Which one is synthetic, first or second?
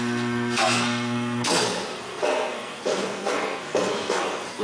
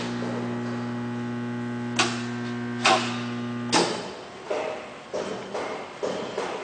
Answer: first